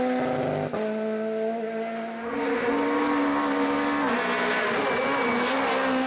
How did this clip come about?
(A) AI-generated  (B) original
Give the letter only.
B